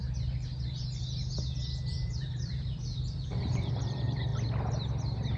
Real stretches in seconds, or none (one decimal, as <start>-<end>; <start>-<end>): 0.0-1.9; 4.3-5.4